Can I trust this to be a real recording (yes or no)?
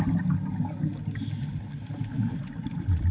yes